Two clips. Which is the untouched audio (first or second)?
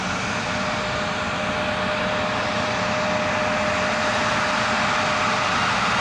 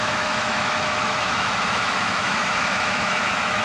first